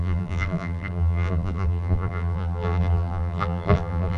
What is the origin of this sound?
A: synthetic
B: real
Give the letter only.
A